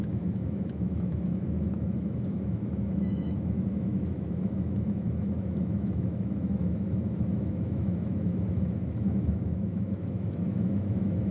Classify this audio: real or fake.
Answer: fake